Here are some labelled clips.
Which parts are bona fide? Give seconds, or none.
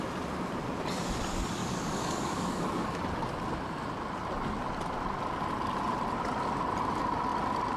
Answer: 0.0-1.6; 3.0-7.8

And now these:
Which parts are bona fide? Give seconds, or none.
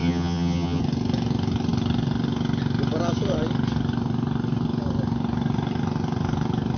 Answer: 0.8-6.8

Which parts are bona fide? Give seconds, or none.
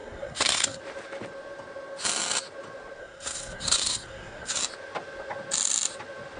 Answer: 0.8-3.0; 4.6-6.4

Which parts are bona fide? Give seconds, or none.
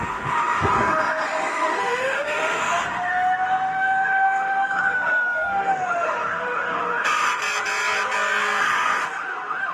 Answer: 7.4-8.6